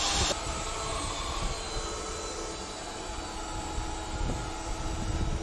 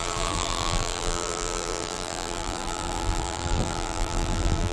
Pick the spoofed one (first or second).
second